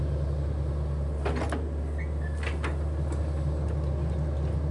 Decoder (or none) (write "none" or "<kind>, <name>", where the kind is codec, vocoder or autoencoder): none